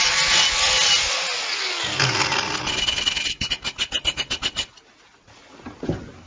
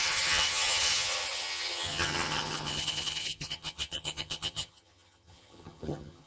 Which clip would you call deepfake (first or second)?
second